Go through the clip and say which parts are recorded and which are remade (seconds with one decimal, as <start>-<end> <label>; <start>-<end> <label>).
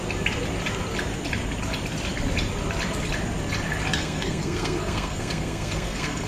0.0-4.0 recorded; 4.0-6.3 remade